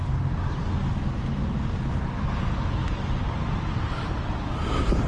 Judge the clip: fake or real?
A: real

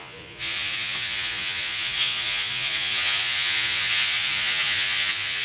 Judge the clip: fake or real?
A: fake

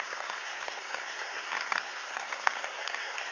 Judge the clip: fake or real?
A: fake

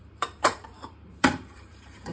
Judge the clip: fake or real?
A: fake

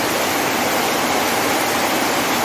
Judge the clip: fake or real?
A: real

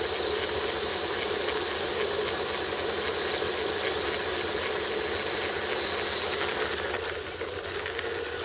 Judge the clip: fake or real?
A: real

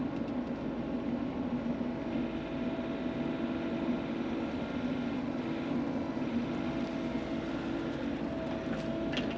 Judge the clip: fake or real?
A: real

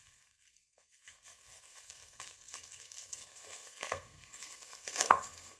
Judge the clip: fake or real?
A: fake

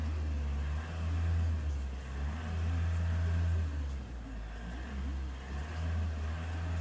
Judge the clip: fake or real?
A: real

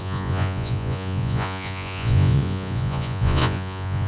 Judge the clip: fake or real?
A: fake